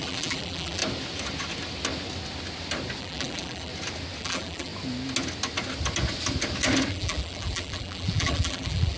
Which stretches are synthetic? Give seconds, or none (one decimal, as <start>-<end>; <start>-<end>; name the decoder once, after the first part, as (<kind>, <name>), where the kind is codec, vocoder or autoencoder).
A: 0.0-0.8 (vocoder, BigVGAN v2); 3.0-3.7; 4.2-4.7; 6.9-9.0